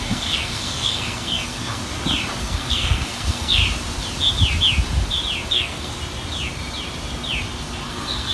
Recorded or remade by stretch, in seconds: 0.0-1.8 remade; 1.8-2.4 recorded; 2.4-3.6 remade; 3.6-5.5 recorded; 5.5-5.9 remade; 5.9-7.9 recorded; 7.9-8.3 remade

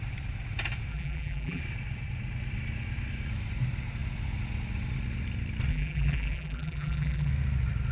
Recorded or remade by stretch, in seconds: 0.0-0.9 recorded; 0.9-1.6 remade; 1.6-5.7 recorded; 5.7-7.3 remade; 7.3-7.9 recorded

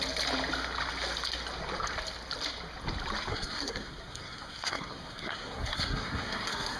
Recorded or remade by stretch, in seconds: 0.0-3.3 recorded; 3.3-6.8 remade

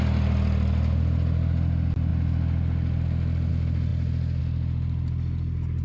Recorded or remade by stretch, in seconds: 0.0-5.8 recorded

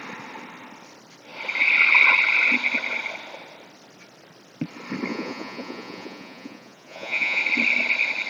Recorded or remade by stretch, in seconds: 0.0-5.1 recorded; 5.1-7.4 remade; 7.4-8.3 recorded

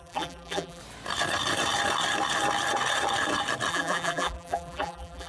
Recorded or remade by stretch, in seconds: 0.0-0.8 remade; 0.8-3.7 recorded; 3.7-5.3 remade